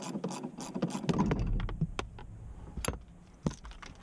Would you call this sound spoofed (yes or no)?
no